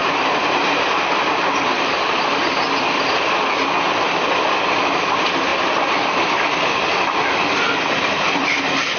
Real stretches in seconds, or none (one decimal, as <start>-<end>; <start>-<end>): 4.4-5.5